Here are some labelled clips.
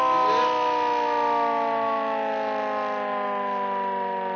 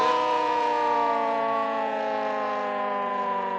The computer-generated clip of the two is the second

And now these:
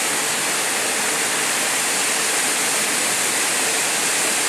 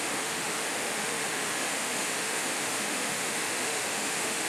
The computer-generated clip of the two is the second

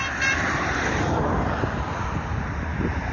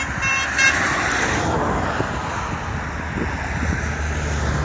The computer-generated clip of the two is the first